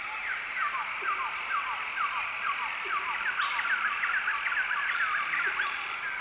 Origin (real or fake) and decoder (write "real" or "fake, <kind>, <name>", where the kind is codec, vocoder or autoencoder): real